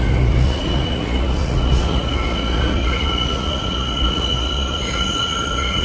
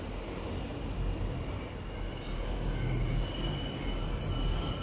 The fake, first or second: first